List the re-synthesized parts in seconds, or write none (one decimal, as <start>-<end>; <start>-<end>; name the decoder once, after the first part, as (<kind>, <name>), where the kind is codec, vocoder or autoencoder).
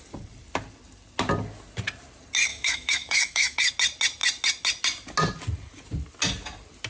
2.5-3.7 (autoencoder, DAC-VAE)